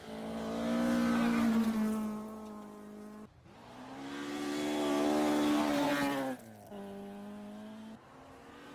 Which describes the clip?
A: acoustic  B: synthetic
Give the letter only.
A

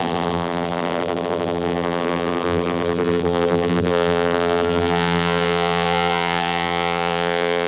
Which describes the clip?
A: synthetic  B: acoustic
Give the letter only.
A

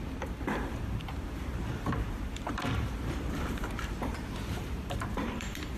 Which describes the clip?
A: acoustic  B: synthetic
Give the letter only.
B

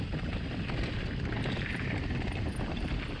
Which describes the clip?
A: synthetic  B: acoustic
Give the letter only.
B